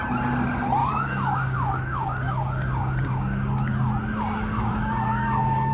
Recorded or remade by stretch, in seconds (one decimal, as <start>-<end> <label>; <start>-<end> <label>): 0.0-0.8 recorded; 0.8-3.9 remade; 3.9-4.4 recorded; 4.4-5.7 remade